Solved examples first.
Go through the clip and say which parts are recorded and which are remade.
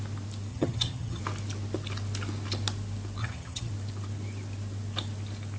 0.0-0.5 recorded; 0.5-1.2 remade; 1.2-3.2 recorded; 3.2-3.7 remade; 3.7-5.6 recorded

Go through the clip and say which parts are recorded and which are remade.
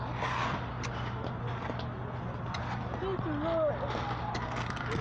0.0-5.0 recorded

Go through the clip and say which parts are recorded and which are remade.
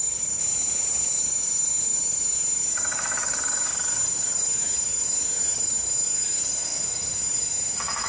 0.0-0.4 remade; 0.4-1.2 recorded; 1.2-8.1 remade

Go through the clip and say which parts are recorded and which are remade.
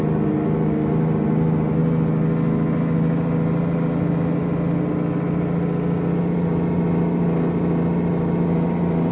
0.0-9.1 recorded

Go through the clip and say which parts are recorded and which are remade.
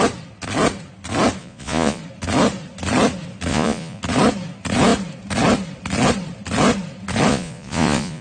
0.0-1.4 recorded; 1.4-2.0 remade; 2.0-3.5 recorded; 3.5-4.0 remade; 4.0-7.3 recorded; 7.3-8.2 remade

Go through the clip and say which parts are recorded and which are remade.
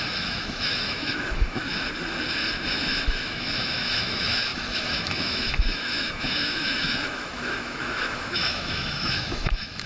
0.0-1.7 remade; 1.7-2.7 recorded; 2.7-9.9 remade